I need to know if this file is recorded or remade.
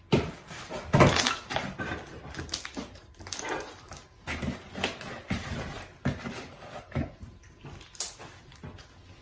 recorded